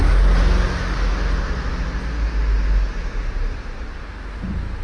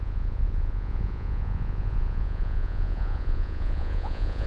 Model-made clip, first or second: second